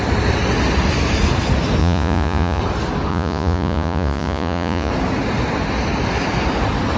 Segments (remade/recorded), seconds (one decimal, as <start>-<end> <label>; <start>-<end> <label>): 0.0-1.8 recorded; 1.8-2.6 remade; 2.6-3.1 recorded; 3.1-4.9 remade; 4.9-7.0 recorded